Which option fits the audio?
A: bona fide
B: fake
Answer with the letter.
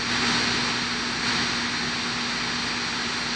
A